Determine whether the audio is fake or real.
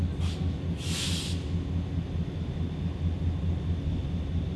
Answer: real